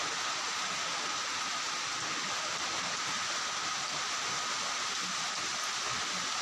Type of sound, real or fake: real